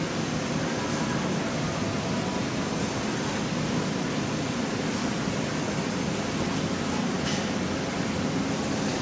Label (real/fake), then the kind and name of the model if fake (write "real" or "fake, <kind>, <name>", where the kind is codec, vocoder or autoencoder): real